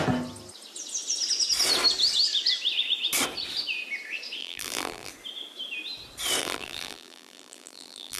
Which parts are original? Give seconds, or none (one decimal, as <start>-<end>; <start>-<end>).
0.0-4.4; 5.1-6.4